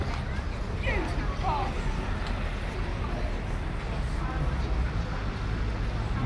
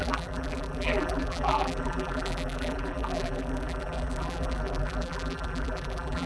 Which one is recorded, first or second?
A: first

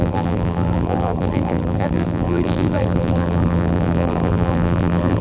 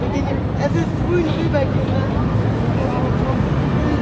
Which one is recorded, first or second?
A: second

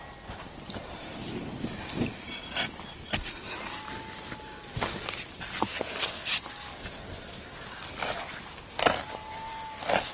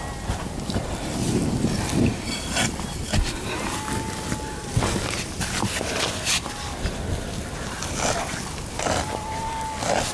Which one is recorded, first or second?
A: first